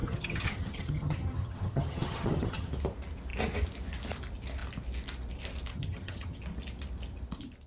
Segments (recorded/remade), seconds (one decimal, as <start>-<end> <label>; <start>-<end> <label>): 0.0-2.7 remade; 2.7-5.7 recorded; 5.7-6.4 remade; 6.4-7.7 recorded

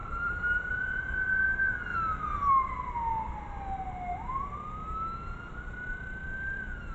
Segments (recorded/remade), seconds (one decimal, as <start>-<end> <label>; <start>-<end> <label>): 0.0-0.7 remade; 0.7-1.9 recorded; 1.9-2.5 remade; 2.5-6.9 recorded

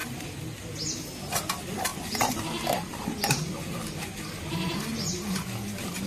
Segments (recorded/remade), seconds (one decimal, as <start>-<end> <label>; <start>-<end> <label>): 0.0-6.1 recorded

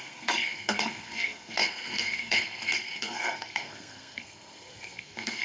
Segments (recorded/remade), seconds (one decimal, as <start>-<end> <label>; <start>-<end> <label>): 0.0-5.4 remade

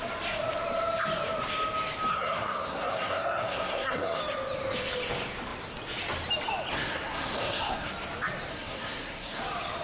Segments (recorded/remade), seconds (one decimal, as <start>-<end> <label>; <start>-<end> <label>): 0.0-2.1 recorded; 2.1-4.2 remade; 4.2-6.7 recorded; 6.7-7.9 remade; 7.9-8.5 recorded; 8.5-9.4 remade; 9.4-9.8 recorded

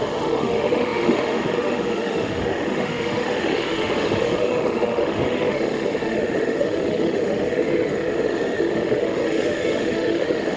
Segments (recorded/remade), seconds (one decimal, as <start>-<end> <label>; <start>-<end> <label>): 0.0-10.6 remade

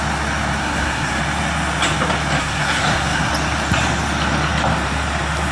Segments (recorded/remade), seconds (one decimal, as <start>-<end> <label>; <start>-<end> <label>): 0.0-0.6 recorded; 0.6-1.2 remade; 1.2-2.4 recorded; 2.4-3.3 remade; 3.3-5.5 recorded

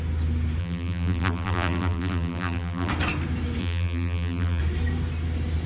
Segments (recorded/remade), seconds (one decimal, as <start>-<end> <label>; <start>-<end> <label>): 0.0-0.6 recorded; 0.6-2.9 remade; 2.9-3.6 recorded; 3.6-4.6 remade; 4.6-5.7 recorded